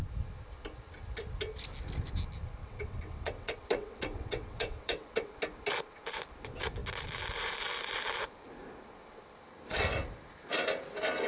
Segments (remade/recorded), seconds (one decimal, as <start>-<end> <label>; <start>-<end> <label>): 0.0-2.6 recorded; 2.6-5.4 remade; 5.4-11.3 recorded